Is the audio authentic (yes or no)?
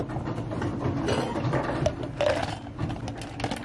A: yes